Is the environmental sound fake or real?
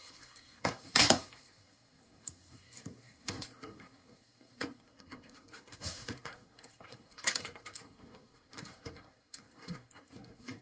fake